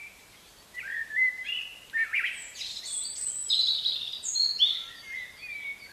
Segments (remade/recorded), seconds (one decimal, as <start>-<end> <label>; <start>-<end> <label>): 0.0-2.8 remade; 2.8-5.9 recorded